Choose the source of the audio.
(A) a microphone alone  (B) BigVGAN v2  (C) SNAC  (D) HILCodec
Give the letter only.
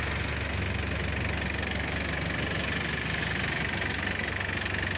A